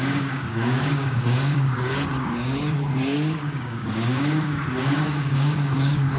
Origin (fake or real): fake